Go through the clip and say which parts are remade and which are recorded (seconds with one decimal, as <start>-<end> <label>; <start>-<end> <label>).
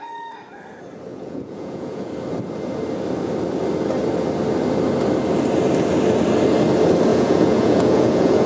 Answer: 0.0-1.1 recorded; 1.1-2.1 remade; 2.1-7.1 recorded; 7.1-8.5 remade